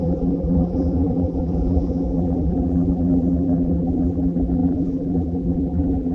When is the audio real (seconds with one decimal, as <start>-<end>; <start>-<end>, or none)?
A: none